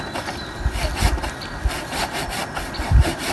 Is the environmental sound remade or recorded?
recorded